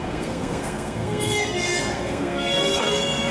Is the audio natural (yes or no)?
no